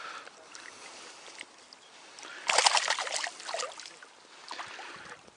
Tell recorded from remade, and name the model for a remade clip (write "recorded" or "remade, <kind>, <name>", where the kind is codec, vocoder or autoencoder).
recorded